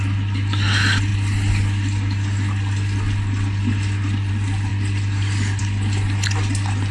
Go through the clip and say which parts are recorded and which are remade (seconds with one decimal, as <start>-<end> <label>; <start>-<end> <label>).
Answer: 0.0-6.9 recorded